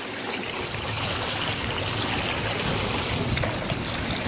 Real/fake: real